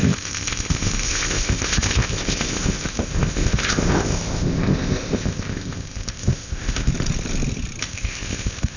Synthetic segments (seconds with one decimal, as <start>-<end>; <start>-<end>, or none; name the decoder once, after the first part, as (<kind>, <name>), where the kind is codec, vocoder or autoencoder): 0.0-6.9 (codec, ZipCodec); 7.8-8.8